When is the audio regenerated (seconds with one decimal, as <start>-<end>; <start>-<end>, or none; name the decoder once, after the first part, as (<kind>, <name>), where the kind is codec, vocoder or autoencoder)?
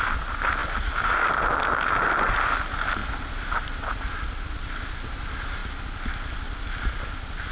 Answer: none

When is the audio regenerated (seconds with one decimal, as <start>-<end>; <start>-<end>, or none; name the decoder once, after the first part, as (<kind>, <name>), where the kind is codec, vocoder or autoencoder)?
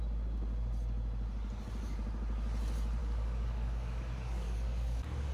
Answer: 3.0-5.3 (codec, DAC)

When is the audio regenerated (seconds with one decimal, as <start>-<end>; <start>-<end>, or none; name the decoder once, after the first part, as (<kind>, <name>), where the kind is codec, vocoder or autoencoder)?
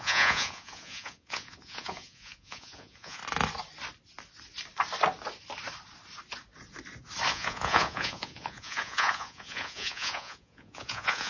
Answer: 0.0-3.2 (vocoder, Vocos); 7.3-11.3